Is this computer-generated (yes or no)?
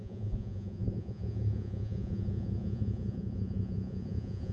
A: yes